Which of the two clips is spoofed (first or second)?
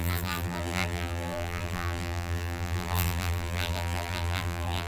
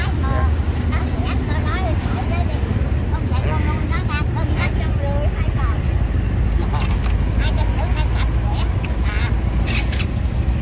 first